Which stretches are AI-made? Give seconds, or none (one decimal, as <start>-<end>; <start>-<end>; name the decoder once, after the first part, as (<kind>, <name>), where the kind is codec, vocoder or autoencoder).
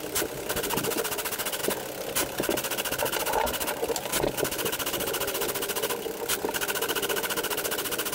none